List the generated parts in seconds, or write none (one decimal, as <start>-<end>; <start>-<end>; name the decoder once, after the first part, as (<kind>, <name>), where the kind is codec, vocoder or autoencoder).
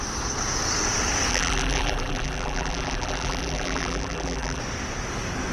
1.3-4.6 (vocoder, BigVGAN v2)